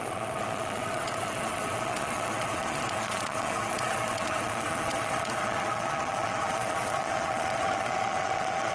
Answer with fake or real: fake